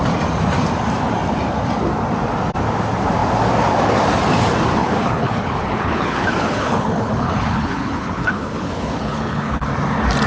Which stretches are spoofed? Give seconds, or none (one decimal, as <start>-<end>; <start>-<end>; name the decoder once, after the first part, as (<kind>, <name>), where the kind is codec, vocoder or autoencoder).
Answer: 4.8-9.7 (codec, HILCodec)